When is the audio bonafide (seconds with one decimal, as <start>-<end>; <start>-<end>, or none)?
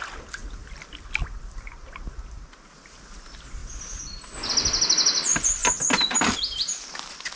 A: 0.0-7.4